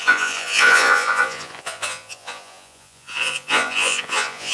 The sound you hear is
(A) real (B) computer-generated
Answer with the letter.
B